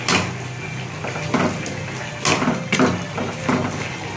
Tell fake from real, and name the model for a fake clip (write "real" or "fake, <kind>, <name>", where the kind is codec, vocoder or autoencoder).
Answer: real